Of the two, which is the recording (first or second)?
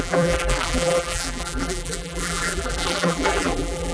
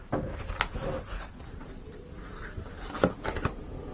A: second